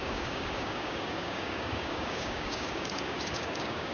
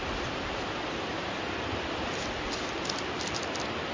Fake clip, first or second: first